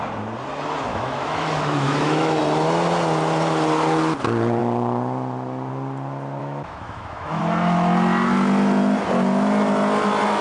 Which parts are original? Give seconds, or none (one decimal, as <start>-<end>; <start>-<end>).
0.0-0.9; 2.4-6.4; 7.4-10.4

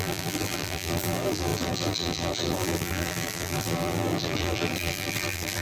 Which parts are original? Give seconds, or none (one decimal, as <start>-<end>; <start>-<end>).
none

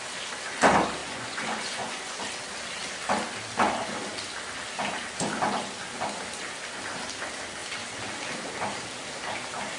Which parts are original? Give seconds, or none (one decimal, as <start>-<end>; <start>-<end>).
0.0-1.0; 2.2-9.8

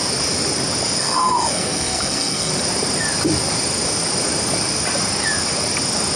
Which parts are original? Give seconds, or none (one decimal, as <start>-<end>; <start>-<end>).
0.0-1.0; 2.5-6.2